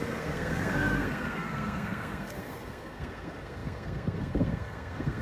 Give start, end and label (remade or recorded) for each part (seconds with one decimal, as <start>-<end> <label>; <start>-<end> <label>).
0.0-5.2 remade